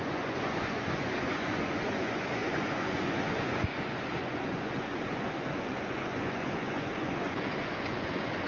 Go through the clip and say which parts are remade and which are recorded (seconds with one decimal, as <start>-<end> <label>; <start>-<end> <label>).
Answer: 0.0-8.5 remade